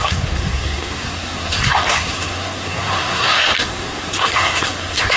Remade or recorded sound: remade